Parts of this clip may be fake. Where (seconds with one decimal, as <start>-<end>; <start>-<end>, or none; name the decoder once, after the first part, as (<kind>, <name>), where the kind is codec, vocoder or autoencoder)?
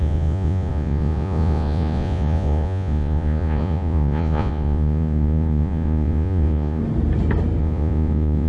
0.0-6.8 (vocoder, Vocos); 7.6-8.5